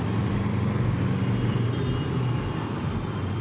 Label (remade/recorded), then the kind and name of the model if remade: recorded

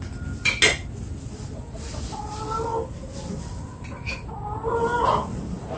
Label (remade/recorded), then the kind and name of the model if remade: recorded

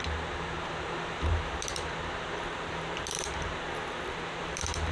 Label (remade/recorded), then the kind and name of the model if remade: remade, vocoder, BigVGAN v2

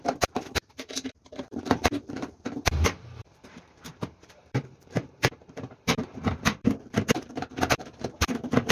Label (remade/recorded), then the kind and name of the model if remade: remade, vocoder, BigVGAN v2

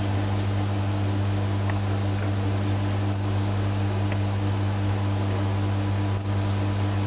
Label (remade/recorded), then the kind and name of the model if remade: recorded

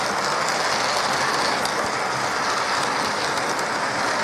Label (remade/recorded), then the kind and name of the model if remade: recorded